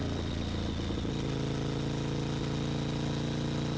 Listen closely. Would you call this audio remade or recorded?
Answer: recorded